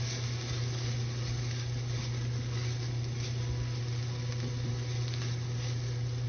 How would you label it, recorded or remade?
recorded